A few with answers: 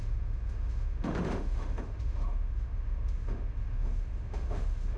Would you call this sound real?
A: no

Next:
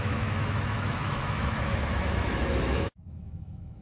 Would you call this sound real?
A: no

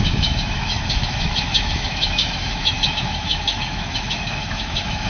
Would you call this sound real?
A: no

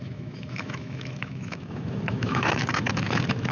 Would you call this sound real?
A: no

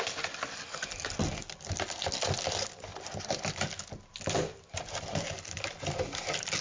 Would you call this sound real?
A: yes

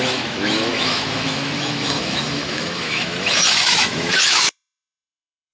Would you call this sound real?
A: no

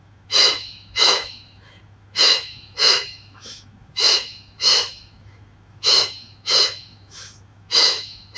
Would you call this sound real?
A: no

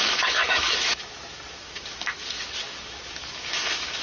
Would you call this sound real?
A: no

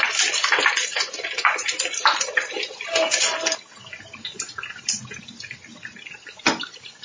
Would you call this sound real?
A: yes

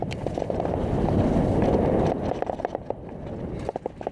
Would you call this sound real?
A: yes